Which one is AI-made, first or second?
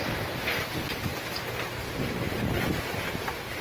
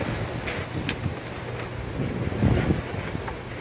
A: first